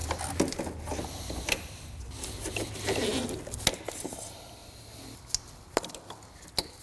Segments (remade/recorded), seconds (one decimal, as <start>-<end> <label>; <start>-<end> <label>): 0.0-6.8 recorded